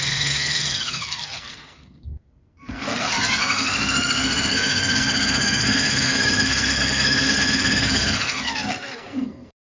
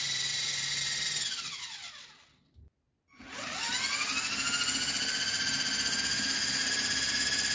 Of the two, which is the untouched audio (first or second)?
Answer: second